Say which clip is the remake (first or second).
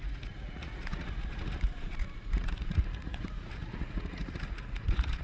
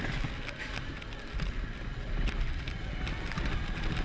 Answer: first